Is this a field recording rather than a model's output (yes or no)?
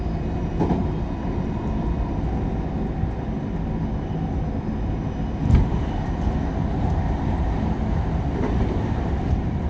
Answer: yes